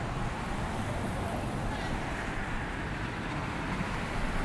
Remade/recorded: recorded